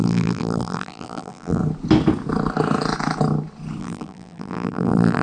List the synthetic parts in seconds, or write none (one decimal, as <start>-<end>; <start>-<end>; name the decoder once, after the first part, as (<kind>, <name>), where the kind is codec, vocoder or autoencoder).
0.0-1.6 (vocoder, BigVGAN v2); 3.8-5.2